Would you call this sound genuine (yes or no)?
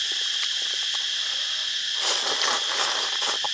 no